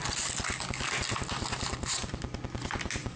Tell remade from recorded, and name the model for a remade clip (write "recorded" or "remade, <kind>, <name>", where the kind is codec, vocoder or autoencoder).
recorded